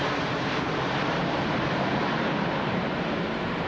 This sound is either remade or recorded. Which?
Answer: remade